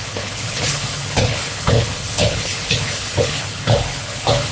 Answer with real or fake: fake